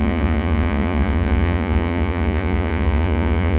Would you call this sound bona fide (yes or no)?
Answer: no